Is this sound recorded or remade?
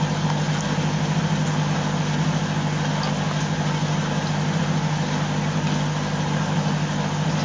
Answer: recorded